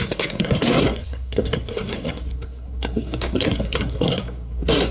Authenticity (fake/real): fake